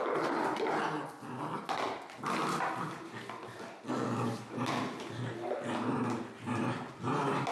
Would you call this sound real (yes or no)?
yes